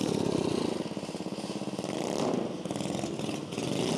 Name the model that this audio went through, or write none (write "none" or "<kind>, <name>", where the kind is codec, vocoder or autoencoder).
none